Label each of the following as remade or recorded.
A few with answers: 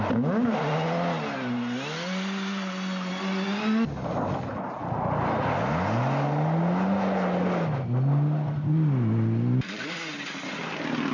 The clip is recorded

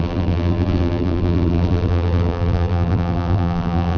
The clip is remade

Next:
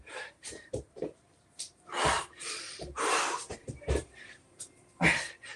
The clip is remade